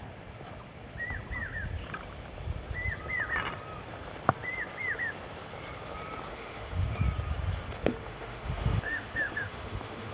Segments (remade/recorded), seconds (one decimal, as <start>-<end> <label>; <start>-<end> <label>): 0.0-6.3 recorded; 6.3-7.0 remade; 7.0-8.0 recorded; 8.0-10.1 remade